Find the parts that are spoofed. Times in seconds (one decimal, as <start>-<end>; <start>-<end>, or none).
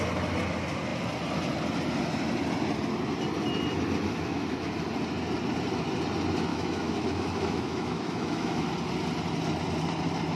4.1-4.7; 6.5-8.7